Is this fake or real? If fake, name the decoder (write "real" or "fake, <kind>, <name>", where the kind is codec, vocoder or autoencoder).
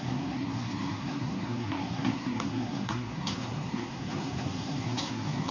fake, codec, SNAC